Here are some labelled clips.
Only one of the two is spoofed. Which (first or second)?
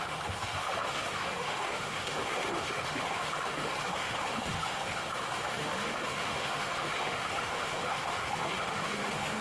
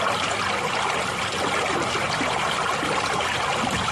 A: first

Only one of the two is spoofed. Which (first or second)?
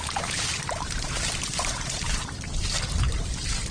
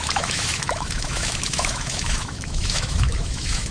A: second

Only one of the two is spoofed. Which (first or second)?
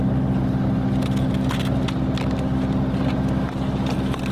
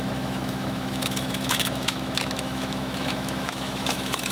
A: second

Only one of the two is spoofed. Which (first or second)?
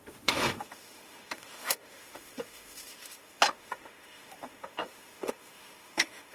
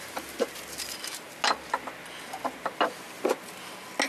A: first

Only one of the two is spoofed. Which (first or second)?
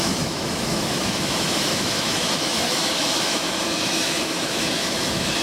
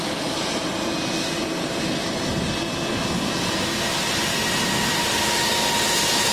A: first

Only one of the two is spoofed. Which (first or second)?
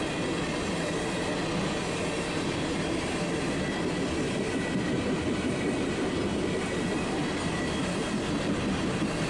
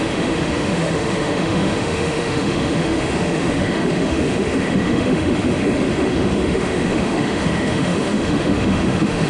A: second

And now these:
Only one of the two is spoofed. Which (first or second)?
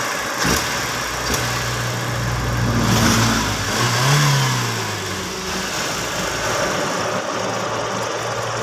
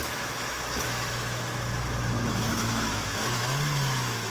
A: second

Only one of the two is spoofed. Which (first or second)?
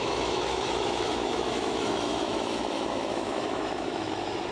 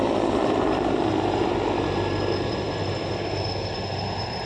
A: first